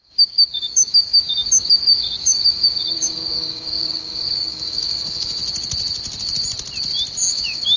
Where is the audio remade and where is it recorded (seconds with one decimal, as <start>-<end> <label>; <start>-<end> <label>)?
0.0-5.4 remade; 5.4-7.3 recorded; 7.3-7.8 remade